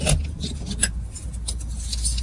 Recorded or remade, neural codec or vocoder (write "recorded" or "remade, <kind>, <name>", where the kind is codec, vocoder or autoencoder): recorded